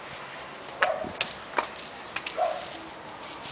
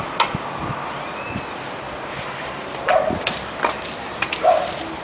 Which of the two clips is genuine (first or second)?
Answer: first